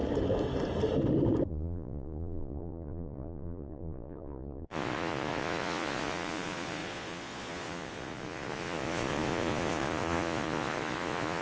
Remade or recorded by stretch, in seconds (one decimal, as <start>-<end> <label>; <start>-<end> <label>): 0.0-1.5 recorded; 1.5-11.4 remade